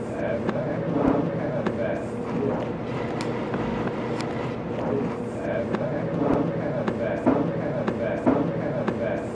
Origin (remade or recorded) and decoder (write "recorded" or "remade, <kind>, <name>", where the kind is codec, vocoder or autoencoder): recorded